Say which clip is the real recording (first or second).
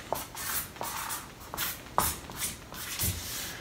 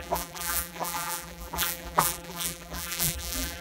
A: first